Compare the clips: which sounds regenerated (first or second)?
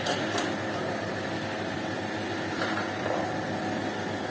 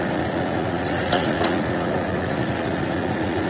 second